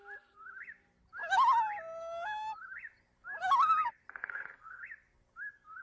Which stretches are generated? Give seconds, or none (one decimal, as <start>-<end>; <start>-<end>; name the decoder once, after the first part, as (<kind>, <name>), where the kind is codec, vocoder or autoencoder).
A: 4.2-4.8 (codec, SNAC)